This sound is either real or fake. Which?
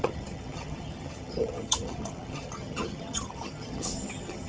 fake